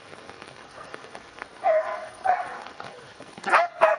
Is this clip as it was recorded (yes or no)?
no